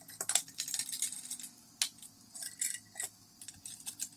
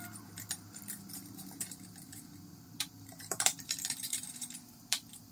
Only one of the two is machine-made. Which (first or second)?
second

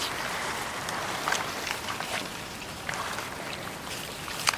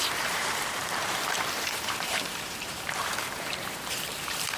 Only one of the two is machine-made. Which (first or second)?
second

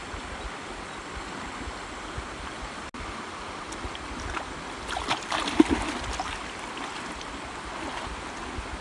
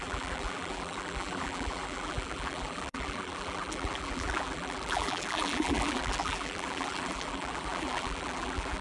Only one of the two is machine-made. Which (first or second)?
second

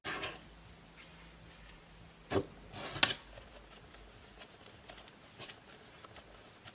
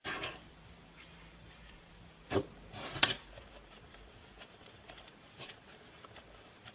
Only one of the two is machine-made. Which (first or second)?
second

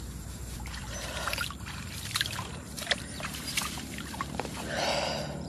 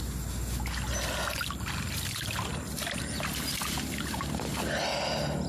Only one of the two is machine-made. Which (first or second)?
first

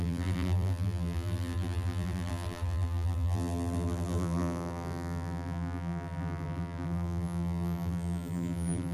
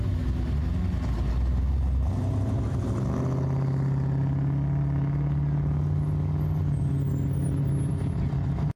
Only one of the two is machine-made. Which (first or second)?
first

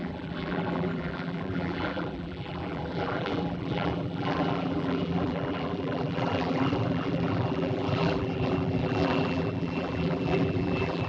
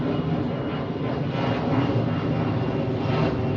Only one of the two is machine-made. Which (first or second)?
first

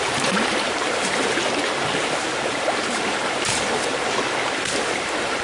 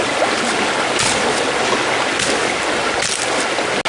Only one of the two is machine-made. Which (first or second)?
first